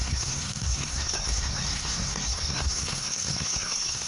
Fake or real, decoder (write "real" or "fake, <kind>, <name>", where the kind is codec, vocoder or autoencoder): fake, codec, SNAC